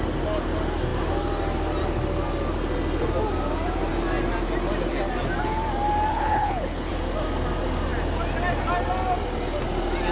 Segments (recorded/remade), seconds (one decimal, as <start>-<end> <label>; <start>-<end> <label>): 0.0-6.1 recorded; 6.1-6.9 remade; 6.9-10.1 recorded